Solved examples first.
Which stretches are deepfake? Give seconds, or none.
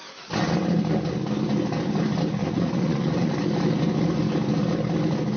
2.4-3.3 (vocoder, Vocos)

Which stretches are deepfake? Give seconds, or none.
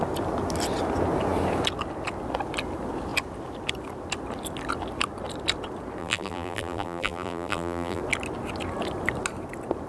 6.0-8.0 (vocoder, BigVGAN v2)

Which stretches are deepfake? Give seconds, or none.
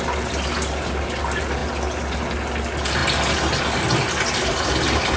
none